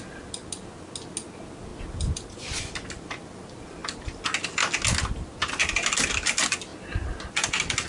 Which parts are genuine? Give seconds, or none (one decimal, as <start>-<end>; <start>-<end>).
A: 0.0-7.9